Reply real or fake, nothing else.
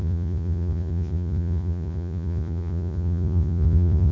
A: fake